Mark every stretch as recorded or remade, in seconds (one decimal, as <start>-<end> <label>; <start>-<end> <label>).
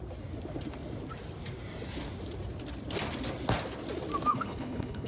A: 0.0-4.3 recorded; 4.3-5.1 remade